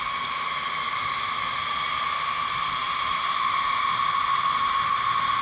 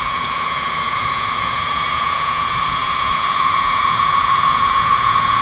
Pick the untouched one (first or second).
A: first